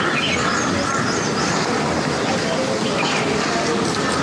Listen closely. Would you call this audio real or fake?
real